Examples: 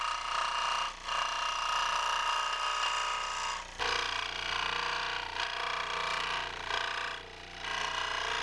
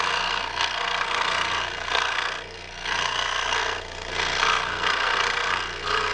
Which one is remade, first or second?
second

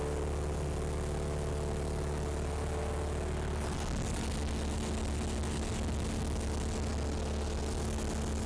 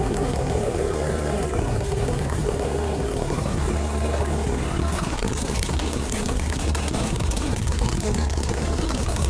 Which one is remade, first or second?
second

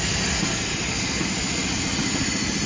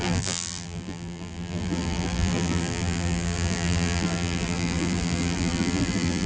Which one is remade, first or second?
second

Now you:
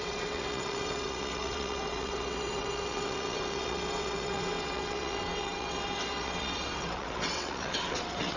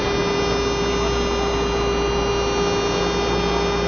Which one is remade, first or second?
first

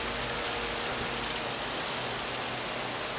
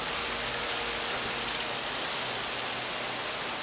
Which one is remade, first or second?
second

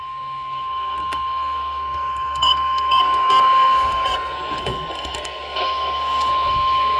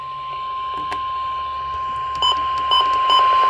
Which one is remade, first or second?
first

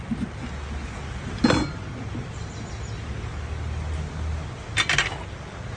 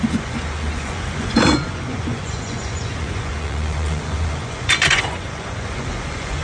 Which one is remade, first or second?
second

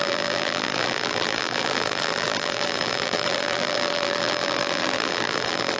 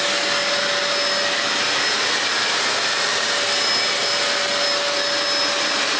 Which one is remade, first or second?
first